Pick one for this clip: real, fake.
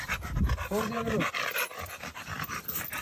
real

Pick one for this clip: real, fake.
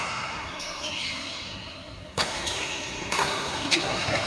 fake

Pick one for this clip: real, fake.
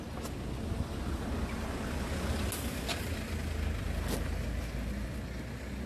real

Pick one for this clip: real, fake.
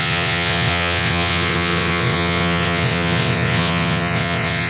fake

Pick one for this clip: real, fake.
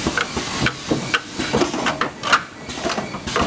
real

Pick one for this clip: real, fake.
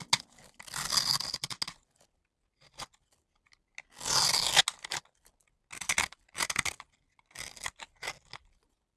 real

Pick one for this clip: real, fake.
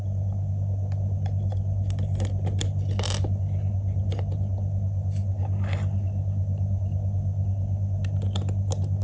real